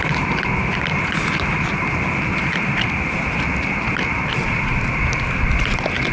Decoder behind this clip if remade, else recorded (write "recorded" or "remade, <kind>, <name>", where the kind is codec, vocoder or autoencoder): recorded